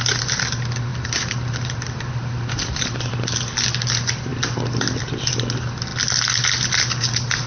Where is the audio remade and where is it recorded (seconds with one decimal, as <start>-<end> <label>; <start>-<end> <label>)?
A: 0.0-0.9 recorded; 0.9-3.1 remade; 3.1-7.5 recorded